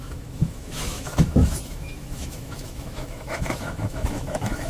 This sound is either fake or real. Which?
fake